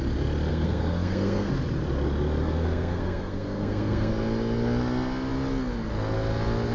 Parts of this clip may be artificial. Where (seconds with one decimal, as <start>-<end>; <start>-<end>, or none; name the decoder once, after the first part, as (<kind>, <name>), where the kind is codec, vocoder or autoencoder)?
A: 0.5-1.5 (codec, SNAC); 2.4-4.1